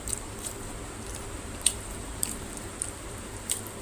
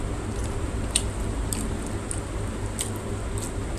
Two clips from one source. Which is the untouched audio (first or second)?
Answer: second